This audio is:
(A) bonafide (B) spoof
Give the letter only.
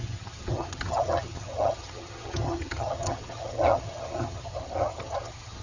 B